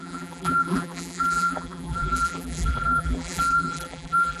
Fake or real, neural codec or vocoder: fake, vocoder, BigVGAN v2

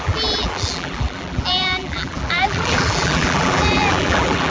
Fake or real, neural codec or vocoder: fake, vocoder, BigVGAN v2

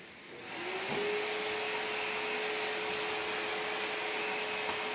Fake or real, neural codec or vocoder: real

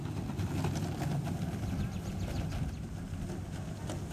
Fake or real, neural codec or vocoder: real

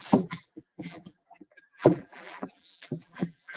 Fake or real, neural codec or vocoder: fake, vocoder, BigVGAN v2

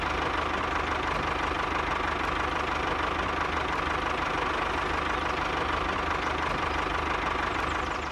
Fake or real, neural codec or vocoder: real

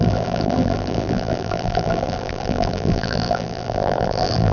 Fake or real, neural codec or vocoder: fake, vocoder, BigVGAN v2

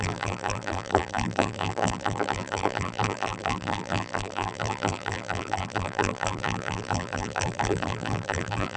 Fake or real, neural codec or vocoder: fake, vocoder, BigVGAN v2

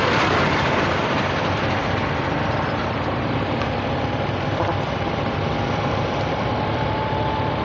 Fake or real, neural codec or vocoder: fake, vocoder, BigVGAN v2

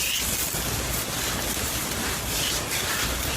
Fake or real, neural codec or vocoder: fake, vocoder, BigVGAN v2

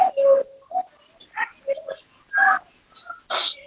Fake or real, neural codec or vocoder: real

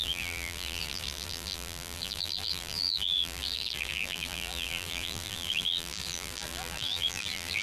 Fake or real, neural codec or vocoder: fake, vocoder, BigVGAN v2